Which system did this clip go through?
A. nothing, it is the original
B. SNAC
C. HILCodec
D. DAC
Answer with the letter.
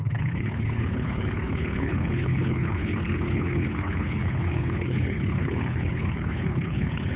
C